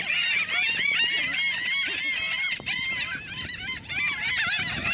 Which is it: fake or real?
real